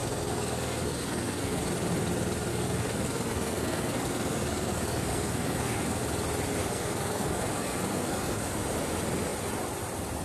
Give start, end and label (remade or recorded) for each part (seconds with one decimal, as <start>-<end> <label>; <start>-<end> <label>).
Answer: 0.0-1.6 remade; 1.6-2.5 recorded; 2.5-6.0 remade; 6.0-6.6 recorded; 6.6-8.5 remade; 8.5-10.2 recorded